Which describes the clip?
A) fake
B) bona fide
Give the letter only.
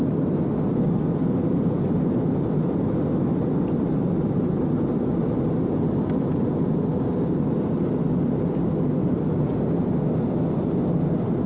B